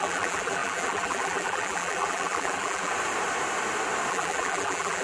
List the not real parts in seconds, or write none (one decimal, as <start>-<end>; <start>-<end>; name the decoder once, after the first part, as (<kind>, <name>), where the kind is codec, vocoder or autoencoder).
0.0-2.9 (vocoder, BigVGAN v2); 4.1-5.0